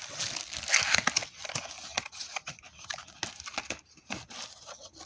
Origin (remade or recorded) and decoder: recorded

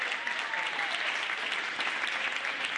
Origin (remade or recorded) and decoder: recorded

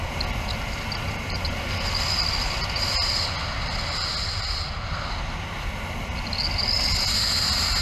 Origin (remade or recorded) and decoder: recorded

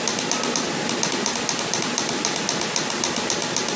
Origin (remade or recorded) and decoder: recorded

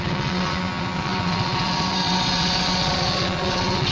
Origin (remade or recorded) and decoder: remade, vocoder, WaveNeXt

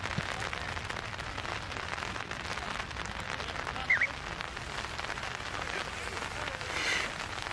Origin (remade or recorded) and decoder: recorded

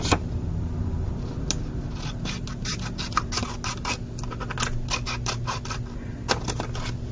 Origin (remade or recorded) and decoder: recorded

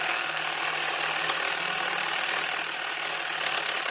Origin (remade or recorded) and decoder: recorded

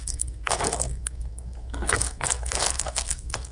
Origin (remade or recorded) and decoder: remade, codec, SNAC